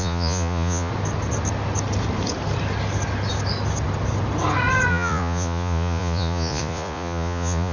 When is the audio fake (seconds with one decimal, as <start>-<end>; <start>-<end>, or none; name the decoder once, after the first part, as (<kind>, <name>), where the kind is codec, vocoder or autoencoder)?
0.0-0.9 (vocoder, Vocos); 4.9-7.7